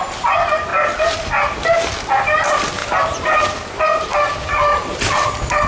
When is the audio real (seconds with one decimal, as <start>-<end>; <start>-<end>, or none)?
0.0-4.7